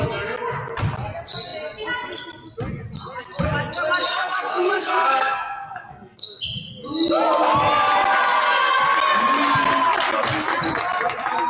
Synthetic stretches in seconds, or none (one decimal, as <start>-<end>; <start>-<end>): 4.1-6.4